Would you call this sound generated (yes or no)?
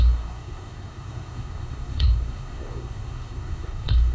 yes